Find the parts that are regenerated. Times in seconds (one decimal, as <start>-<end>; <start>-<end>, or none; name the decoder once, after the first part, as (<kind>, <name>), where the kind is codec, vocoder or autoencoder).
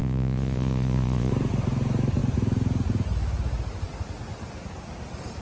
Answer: 0.0-1.3 (vocoder, Vocos)